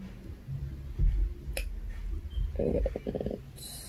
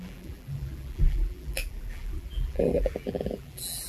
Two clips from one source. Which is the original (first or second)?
first